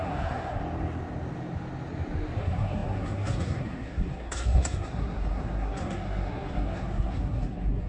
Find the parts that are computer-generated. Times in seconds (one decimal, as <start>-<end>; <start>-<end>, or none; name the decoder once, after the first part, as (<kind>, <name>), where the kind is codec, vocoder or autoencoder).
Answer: 0.0-0.6 (codec, SNAC); 2.4-7.9